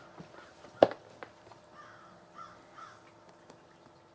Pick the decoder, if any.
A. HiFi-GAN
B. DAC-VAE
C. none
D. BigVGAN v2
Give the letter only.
C